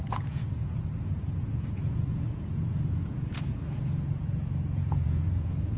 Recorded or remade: remade